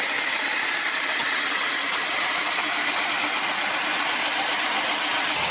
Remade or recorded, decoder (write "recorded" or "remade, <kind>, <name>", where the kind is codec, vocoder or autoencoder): recorded